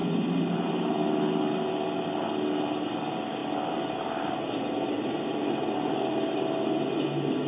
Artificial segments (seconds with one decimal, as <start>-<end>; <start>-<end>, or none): none